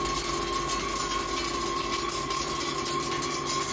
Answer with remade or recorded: recorded